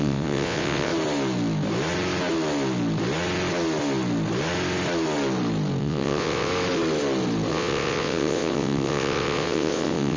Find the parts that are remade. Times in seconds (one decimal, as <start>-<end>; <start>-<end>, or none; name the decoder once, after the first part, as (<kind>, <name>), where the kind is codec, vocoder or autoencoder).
0.0-0.9 (vocoder, WaveNeXt); 5.8-6.5; 7.5-10.2